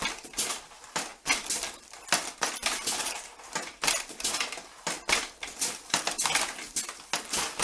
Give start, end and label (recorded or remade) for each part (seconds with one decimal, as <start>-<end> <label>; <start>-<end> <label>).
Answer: 0.0-7.6 recorded